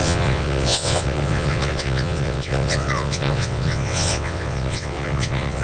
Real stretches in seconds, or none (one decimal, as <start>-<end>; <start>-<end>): none